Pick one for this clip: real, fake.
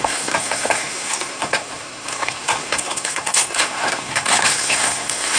fake